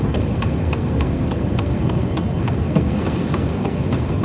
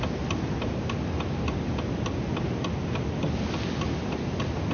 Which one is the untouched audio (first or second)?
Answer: second